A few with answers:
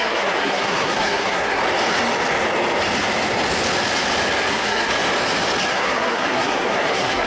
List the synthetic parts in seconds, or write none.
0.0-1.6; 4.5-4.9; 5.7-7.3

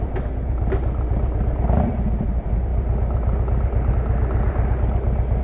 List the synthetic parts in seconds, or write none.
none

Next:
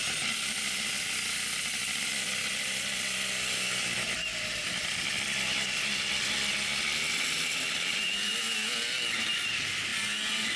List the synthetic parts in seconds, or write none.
none

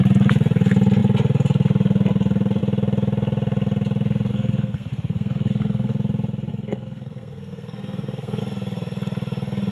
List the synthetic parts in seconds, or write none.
4.3-5.9; 6.5-8.4